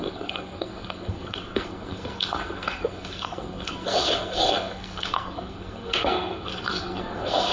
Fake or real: fake